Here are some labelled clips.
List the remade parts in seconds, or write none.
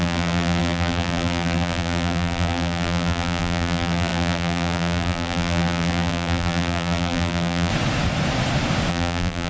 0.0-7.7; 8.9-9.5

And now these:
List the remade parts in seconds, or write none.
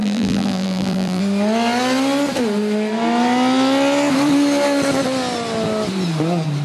0.0-1.2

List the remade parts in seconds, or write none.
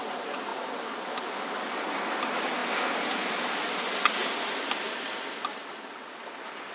none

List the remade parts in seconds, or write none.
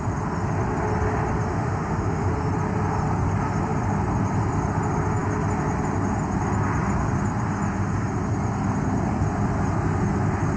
1.5-2.3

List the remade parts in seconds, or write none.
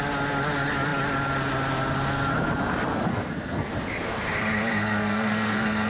3.1-3.7; 4.7-5.9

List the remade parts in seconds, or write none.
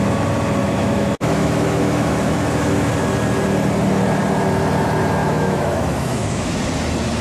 0.6-2.9; 5.2-6.6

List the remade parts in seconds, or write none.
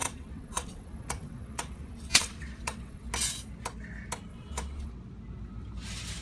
0.0-3.1; 4.3-4.9